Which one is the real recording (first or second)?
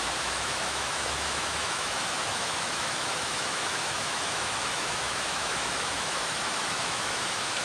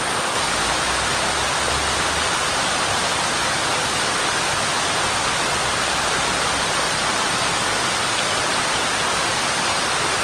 second